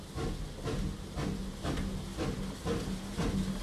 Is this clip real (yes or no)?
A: yes